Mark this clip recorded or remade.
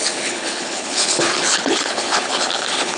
remade